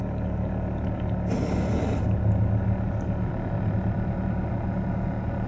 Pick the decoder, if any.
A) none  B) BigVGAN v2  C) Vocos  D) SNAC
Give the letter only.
A